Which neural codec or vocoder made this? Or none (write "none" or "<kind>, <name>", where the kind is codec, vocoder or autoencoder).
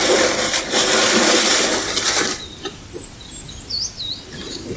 vocoder, BigVGAN v2